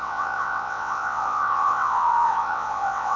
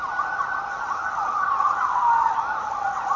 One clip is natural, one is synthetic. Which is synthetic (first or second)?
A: first